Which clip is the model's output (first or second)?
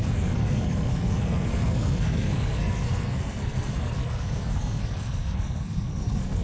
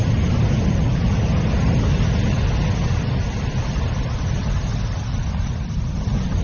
first